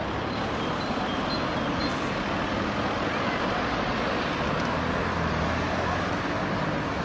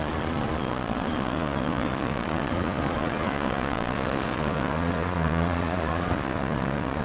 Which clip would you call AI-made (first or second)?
second